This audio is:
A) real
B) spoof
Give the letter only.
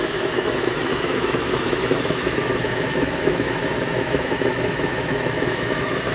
B